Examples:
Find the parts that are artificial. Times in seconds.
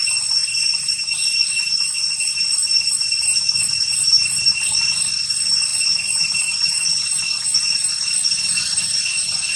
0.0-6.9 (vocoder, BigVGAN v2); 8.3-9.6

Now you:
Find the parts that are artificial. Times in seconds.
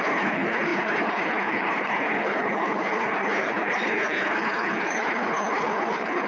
0.0-6.3 (codec, HILCodec)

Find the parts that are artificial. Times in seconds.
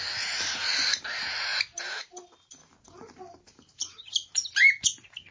2.6-4.6 (vocoder, BigVGAN v2)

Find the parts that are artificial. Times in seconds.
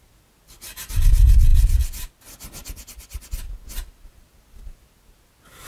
none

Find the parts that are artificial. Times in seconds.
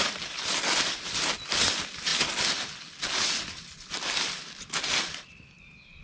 none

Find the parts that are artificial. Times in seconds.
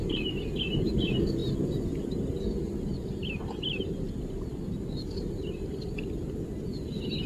none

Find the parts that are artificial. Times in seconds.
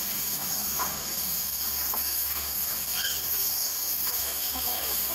0.0-5.1 (codec, DAC)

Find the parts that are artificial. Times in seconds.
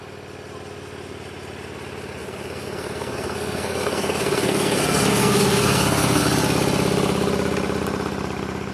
2.2-6.2 (codec, SNAC)